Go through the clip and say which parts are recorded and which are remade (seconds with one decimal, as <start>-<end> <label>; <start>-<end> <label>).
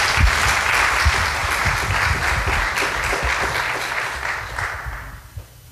0.0-5.7 recorded